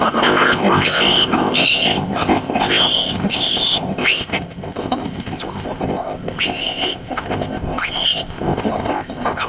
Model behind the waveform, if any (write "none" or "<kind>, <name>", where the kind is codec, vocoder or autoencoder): codec, ZipCodec